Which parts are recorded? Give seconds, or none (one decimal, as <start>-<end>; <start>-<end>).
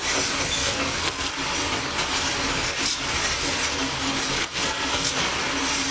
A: 0.0-0.6; 1.3-4.4; 5.1-5.9